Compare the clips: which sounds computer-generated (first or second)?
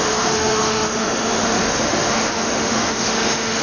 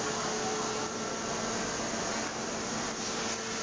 first